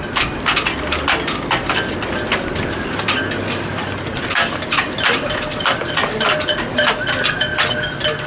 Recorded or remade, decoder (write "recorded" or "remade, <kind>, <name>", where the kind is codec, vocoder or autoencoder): recorded